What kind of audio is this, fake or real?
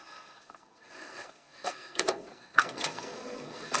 fake